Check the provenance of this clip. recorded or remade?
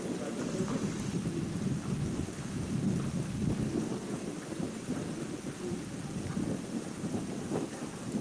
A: recorded